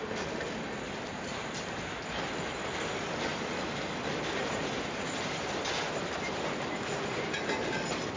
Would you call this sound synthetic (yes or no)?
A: no